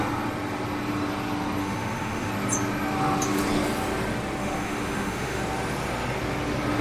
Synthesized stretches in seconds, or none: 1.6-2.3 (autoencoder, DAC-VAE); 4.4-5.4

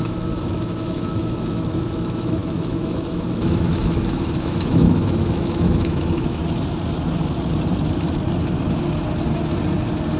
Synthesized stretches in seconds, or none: 0.0-6.4 (autoencoder, DAC-VAE)